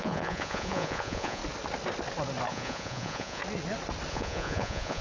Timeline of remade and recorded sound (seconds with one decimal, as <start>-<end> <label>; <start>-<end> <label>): 0.0-1.4 remade; 1.4-2.5 recorded; 2.5-3.4 remade; 3.4-4.1 recorded; 4.1-5.0 remade